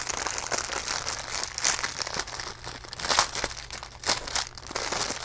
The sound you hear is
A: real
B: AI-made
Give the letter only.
A